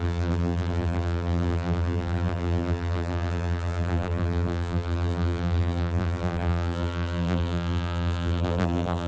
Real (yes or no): no